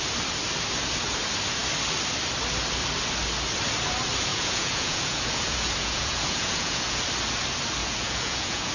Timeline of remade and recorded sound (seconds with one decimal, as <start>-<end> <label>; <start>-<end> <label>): 0.0-4.3 recorded; 4.3-7.0 remade; 7.0-7.8 recorded; 7.8-8.7 remade